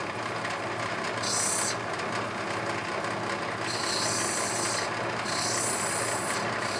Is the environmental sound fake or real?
real